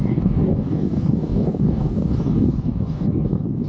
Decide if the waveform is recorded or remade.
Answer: remade